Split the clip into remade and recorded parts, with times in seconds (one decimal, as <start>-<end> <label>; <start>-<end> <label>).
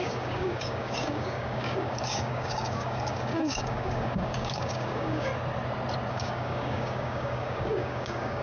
0.0-5.3 remade; 5.3-6.1 recorded; 6.1-8.4 remade